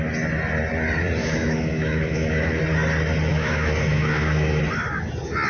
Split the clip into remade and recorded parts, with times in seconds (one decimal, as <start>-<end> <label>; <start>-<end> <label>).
0.0-1.2 recorded; 1.2-2.6 remade; 2.6-3.3 recorded; 3.3-4.6 remade; 4.6-5.5 recorded